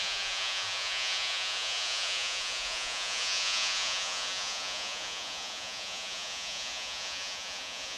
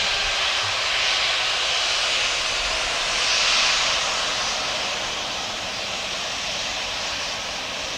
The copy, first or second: first